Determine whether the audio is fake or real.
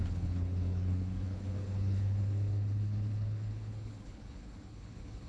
fake